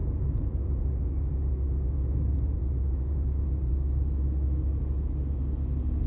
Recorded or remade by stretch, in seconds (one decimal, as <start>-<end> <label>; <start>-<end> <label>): 0.0-3.7 remade; 3.7-6.1 recorded